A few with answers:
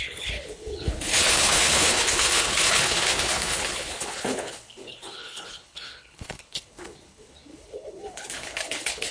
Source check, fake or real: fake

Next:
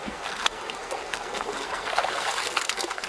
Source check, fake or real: fake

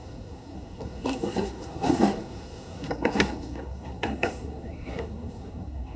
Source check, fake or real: fake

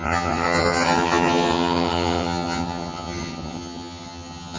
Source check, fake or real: fake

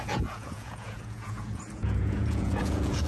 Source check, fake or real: fake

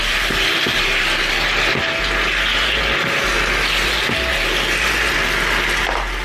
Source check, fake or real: real